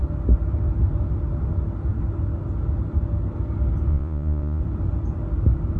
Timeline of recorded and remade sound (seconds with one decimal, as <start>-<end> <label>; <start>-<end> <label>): 0.0-3.9 recorded; 3.9-4.6 remade; 4.6-5.8 recorded